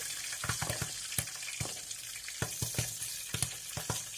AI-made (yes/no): no